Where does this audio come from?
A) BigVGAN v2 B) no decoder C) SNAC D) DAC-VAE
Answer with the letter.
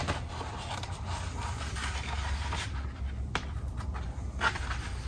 B